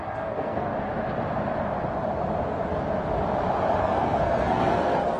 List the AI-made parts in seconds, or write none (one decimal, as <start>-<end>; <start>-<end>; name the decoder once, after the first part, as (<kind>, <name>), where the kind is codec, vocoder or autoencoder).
0.0-0.7 (codec, SNAC); 3.8-5.2